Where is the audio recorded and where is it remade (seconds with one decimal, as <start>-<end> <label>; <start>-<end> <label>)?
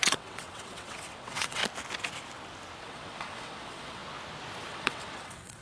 0.0-1.6 remade; 1.6-2.8 recorded; 2.8-4.0 remade; 4.0-4.7 recorded; 4.7-5.6 remade